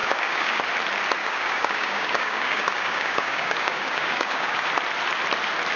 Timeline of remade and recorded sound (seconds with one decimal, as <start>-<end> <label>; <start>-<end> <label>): 0.0-0.6 remade; 0.6-1.2 recorded; 1.2-4.7 remade; 4.7-5.8 recorded